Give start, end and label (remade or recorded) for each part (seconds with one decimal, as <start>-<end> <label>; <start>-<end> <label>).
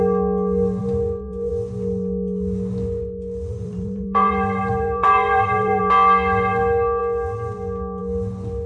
0.0-0.8 recorded; 0.8-1.5 remade; 1.5-3.5 recorded; 3.5-5.8 remade; 5.8-8.7 recorded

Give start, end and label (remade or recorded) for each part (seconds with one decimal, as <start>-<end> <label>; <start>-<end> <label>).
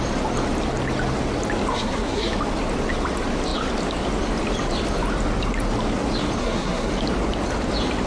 0.0-1.7 recorded; 1.7-2.3 remade; 2.3-6.4 recorded; 6.4-6.9 remade; 6.9-8.1 recorded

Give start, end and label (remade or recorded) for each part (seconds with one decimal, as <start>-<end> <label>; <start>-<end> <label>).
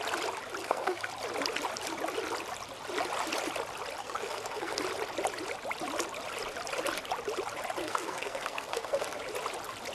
0.0-0.6 recorded; 0.6-1.1 remade; 1.1-4.0 recorded; 4.0-4.8 remade; 4.8-7.8 recorded; 7.8-9.2 remade; 9.2-9.9 recorded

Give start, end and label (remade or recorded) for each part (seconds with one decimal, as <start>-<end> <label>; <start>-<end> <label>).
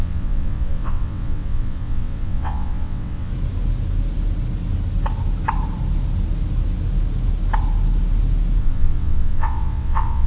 0.0-3.3 remade; 3.3-8.6 recorded; 8.6-10.3 remade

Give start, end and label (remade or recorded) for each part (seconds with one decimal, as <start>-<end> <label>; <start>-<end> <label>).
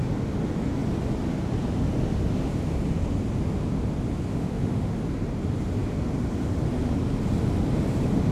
0.0-4.3 recorded; 4.3-4.9 remade; 4.9-8.3 recorded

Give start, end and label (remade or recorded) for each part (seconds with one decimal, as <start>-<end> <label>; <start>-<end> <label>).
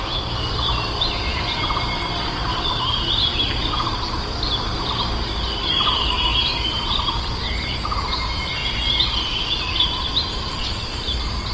0.0-8.6 remade; 8.6-9.7 recorded; 9.7-11.5 remade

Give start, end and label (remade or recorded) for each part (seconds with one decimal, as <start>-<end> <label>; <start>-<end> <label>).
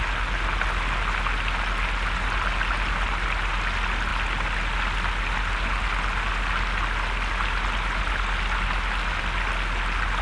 0.0-10.2 recorded